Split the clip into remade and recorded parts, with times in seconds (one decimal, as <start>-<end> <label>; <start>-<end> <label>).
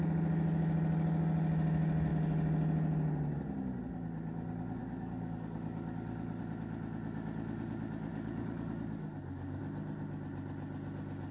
0.0-4.8 recorded; 4.8-6.4 remade; 6.4-8.1 recorded; 8.1-9.6 remade; 9.6-11.3 recorded